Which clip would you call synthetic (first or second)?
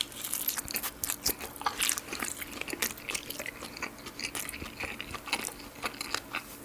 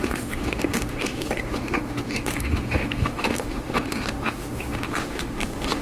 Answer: second